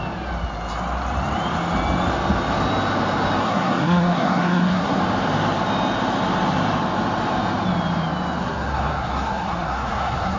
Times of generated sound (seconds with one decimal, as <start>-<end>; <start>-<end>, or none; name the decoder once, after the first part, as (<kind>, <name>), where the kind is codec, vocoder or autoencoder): 3.4-5.0 (codec, SNAC); 8.4-10.4